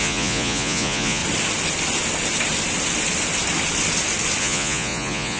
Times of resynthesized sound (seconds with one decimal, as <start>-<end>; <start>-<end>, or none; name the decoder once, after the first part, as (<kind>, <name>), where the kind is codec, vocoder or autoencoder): 0.0-1.2 (vocoder, Vocos); 4.4-5.4